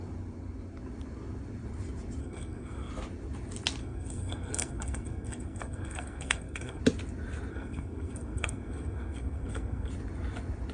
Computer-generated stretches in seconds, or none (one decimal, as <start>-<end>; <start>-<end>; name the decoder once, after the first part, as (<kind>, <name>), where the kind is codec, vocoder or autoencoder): 2.2-2.9 (codec, SNAC); 3.8-6.8; 7.5-9.9